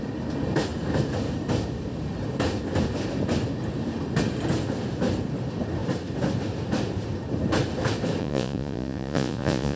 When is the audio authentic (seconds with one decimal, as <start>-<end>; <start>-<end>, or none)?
0.0-8.2